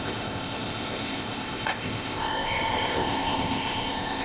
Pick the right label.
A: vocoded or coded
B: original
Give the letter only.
A